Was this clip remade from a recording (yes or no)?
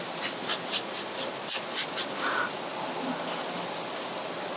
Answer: no